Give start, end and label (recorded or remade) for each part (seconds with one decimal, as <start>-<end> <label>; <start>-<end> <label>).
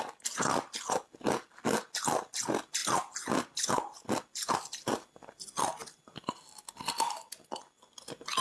0.0-8.4 recorded